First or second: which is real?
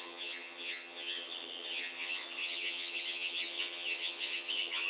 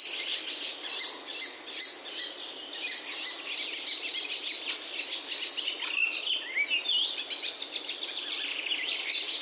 second